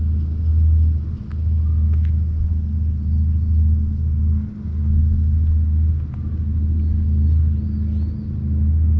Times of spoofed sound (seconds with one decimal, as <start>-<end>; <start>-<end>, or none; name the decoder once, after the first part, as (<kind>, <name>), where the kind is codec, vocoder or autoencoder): none